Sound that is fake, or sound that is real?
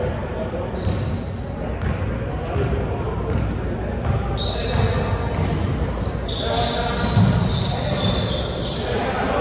real